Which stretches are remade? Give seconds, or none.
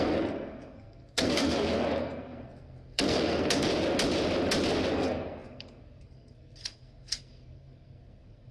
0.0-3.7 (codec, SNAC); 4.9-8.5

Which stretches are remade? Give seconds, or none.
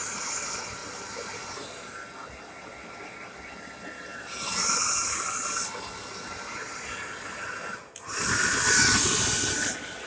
none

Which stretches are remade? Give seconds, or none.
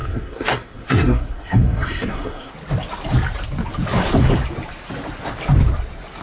0.0-2.5 (codec, SNAC)